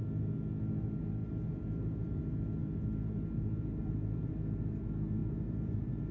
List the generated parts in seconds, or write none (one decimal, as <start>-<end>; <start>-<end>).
1.2-2.2; 2.6-4.3; 5.2-6.1